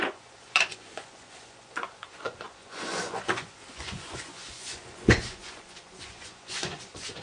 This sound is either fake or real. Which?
fake